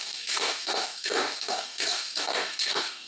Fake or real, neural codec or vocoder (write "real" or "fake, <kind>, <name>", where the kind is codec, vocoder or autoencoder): fake, codec, DAC